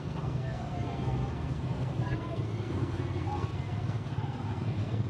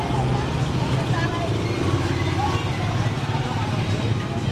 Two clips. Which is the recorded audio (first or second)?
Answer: second